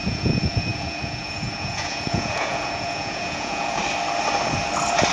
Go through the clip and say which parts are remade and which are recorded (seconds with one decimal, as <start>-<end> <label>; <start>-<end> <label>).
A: 0.0-3.8 remade; 3.8-5.1 recorded